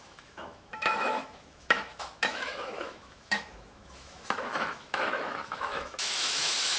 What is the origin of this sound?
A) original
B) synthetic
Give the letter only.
B